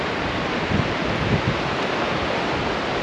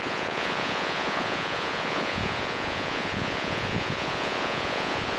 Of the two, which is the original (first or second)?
first